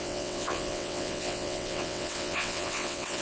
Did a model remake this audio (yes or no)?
yes